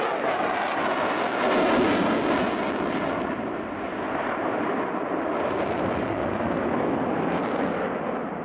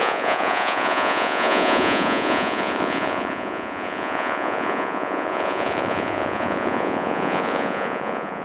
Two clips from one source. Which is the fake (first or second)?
second